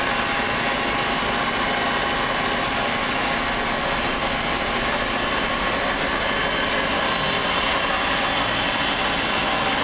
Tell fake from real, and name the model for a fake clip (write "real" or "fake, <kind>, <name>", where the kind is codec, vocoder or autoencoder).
real